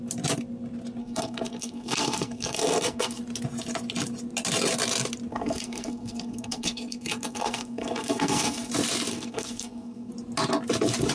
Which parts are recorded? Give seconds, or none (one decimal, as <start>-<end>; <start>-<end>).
0.0-1.0; 3.2-5.3; 8.7-9.1; 10.1-11.1

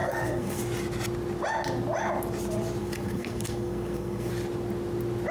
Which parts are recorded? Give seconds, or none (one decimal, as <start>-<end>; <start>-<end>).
0.6-2.8; 4.3-5.3